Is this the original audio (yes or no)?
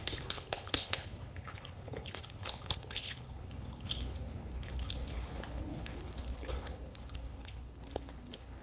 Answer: no